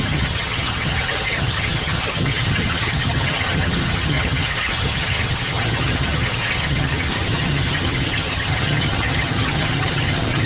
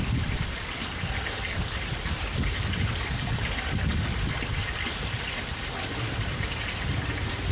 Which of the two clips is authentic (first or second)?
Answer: second